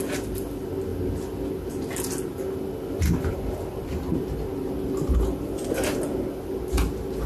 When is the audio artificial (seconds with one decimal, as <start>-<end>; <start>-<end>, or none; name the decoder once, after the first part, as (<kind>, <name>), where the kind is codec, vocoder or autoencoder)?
none